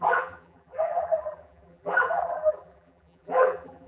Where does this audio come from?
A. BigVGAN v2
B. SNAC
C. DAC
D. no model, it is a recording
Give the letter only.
A